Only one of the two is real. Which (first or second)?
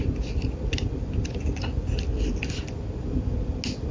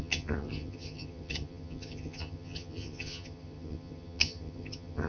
first